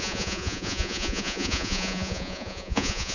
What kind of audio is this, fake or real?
fake